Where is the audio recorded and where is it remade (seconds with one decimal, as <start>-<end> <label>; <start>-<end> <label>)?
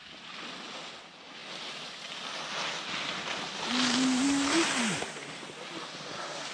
0.0-6.5 recorded